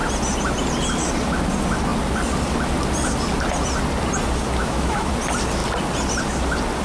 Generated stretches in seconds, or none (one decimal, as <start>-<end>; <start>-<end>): 4.6-5.1